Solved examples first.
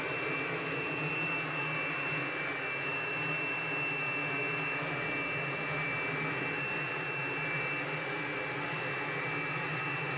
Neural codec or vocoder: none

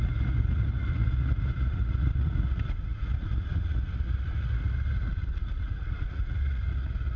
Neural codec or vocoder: vocoder, Vocos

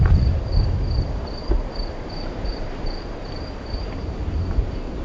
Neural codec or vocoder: vocoder, BigVGAN v2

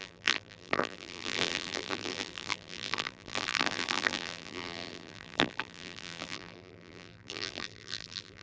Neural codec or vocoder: vocoder, BigVGAN v2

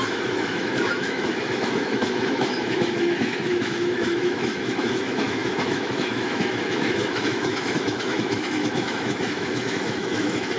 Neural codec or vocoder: autoencoder, DAC-VAE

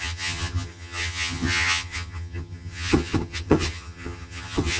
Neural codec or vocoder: vocoder, HiFi-GAN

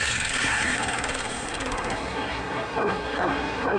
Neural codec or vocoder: codec, SNAC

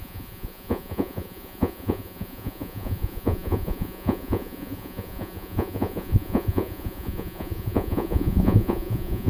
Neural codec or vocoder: vocoder, Vocos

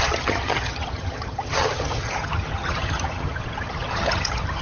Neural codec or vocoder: vocoder, HiFi-GAN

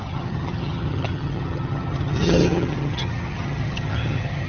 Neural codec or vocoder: vocoder, HiFi-GAN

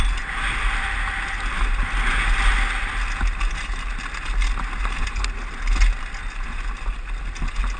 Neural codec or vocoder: none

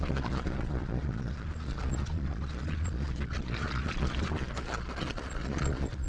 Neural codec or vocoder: vocoder, Vocos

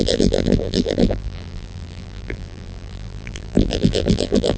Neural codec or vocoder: vocoder, BigVGAN v2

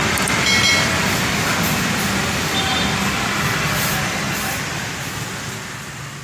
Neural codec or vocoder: none